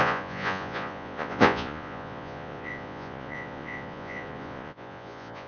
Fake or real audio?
fake